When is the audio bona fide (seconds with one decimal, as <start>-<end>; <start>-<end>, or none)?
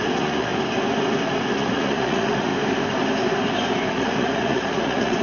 0.5-1.5; 2.5-3.9